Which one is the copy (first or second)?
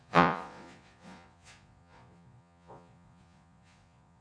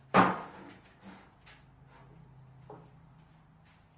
first